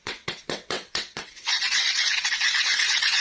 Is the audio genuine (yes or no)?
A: no